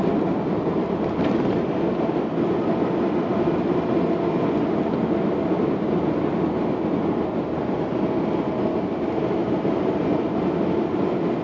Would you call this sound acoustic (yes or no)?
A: yes